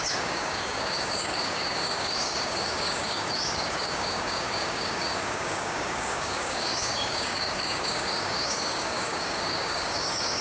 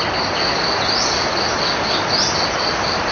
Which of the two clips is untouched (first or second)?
second